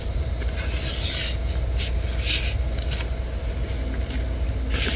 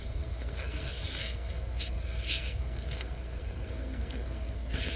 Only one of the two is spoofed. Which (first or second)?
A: second